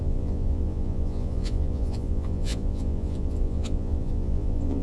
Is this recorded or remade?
remade